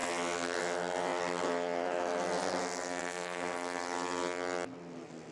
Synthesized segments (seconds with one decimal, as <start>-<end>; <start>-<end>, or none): none